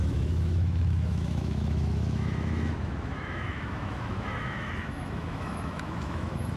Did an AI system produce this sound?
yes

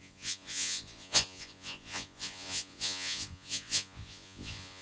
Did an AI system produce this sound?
yes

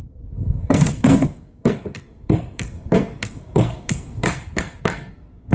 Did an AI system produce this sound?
yes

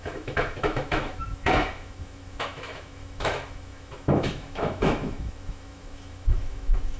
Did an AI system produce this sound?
yes